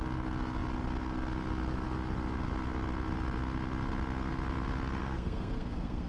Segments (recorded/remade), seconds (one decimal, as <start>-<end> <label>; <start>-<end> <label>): 0.0-5.0 recorded; 5.0-6.1 remade